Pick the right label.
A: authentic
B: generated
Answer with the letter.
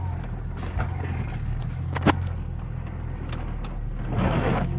A